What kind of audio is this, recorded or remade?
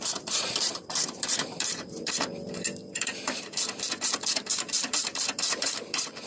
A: remade